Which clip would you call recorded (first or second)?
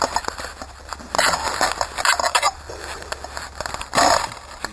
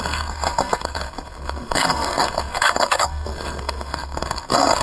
first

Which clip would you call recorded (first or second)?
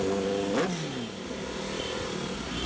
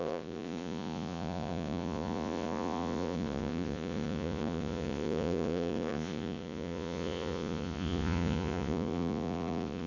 first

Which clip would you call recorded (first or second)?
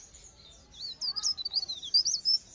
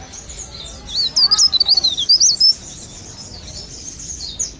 second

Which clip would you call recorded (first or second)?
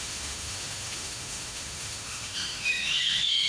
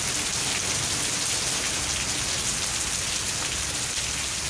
second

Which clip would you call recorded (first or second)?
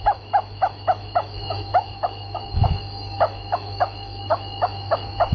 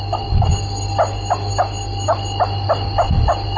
second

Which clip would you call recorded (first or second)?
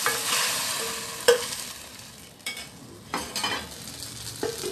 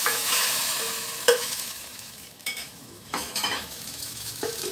first